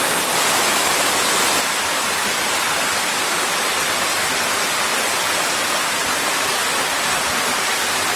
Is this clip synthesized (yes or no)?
no